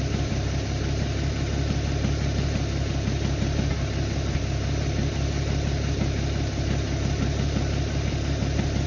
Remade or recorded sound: recorded